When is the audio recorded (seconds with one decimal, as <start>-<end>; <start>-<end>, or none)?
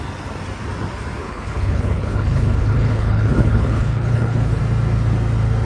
0.0-1.2; 4.6-5.7